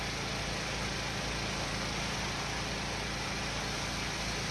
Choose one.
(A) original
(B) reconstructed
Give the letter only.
A